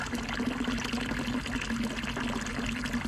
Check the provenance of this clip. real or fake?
real